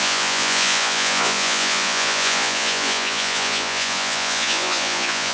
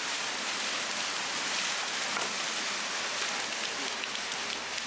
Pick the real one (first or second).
second